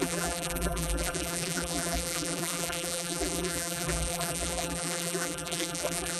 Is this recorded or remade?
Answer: remade